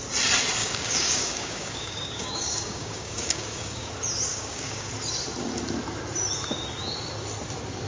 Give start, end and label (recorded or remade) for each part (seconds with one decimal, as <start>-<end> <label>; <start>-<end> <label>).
0.0-0.6 recorded; 0.6-3.9 remade; 3.9-4.3 recorded; 4.3-4.9 remade; 4.9-7.9 recorded

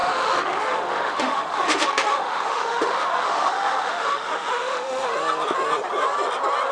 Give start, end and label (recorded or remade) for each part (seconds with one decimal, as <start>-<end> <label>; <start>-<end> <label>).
0.0-5.1 remade; 5.1-6.7 recorded

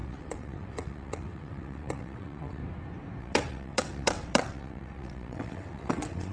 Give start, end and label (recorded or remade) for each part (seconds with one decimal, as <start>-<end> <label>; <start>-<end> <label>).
0.0-2.6 remade; 2.6-3.2 recorded; 3.2-6.3 remade